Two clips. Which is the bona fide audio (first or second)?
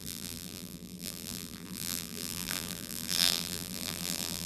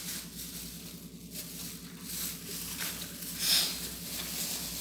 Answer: second